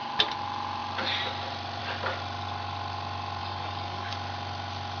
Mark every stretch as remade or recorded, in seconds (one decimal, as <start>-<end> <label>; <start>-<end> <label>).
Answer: 0.0-3.4 recorded; 3.4-4.1 remade; 4.1-5.0 recorded